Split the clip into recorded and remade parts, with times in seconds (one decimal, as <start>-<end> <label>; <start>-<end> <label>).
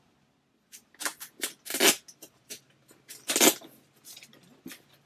0.0-5.1 recorded